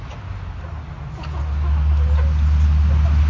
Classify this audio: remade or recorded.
recorded